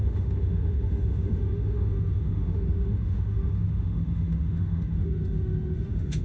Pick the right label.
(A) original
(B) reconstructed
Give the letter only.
B